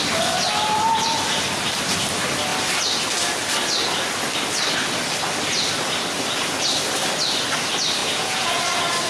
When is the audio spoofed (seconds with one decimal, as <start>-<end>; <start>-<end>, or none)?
8.0-8.6